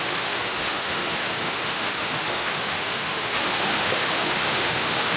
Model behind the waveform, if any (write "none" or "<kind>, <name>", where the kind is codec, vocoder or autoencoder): autoencoder, DAC-VAE